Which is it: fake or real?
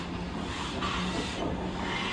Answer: real